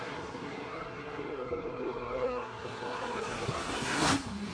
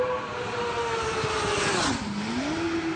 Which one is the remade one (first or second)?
first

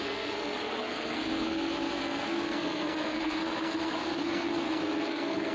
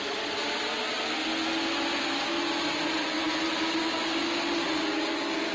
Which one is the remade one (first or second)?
first